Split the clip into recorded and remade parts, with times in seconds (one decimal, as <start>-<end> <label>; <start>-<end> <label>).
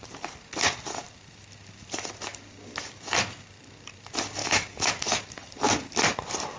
0.0-4.4 recorded; 4.4-4.9 remade; 4.9-6.6 recorded